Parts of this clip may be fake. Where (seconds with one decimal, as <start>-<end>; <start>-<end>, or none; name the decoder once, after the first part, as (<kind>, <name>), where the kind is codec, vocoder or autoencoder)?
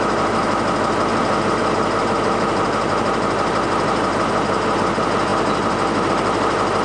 none